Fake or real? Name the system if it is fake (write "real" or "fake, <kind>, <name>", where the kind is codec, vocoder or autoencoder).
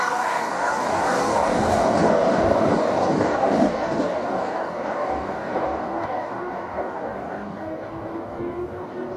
fake, codec, DAC